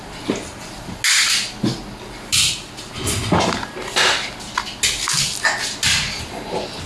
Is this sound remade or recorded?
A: recorded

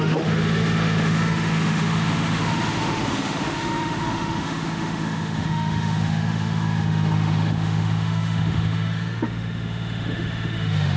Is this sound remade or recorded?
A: remade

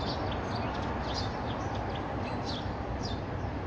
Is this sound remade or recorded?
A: recorded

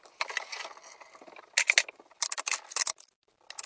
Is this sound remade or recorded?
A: recorded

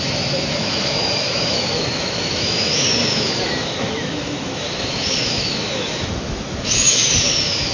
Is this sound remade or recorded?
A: remade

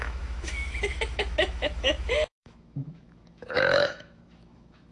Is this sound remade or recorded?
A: remade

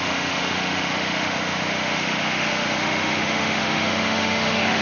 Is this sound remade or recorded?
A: remade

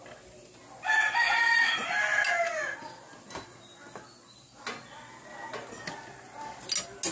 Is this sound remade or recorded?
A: recorded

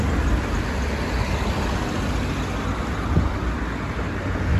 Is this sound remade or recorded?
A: recorded